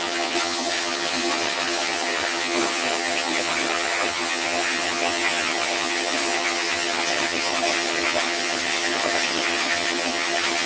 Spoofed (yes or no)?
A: yes